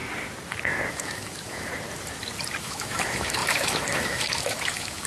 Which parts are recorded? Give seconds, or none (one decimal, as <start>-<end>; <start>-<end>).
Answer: 0.0-0.9; 1.7-2.6